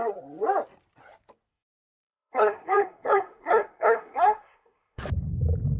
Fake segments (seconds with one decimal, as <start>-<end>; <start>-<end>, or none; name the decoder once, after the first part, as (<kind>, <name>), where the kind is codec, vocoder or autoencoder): 1.5-5.0 (codec, SNAC)